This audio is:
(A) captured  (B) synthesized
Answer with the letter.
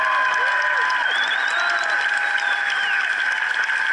A